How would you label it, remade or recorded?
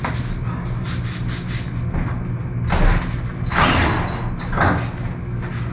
recorded